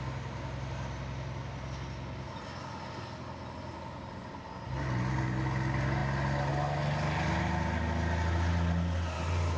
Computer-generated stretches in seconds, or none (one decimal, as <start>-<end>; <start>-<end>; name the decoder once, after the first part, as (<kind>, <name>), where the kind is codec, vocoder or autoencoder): none